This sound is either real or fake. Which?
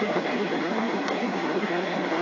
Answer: fake